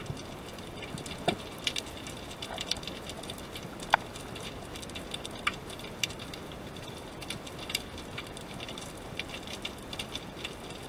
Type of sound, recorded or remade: recorded